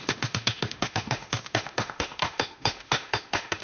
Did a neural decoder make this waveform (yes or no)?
yes